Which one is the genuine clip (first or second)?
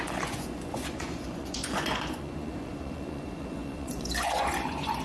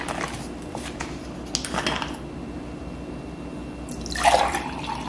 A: second